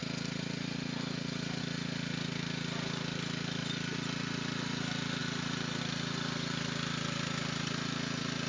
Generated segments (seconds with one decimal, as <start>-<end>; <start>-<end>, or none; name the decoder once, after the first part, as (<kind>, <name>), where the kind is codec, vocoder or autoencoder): none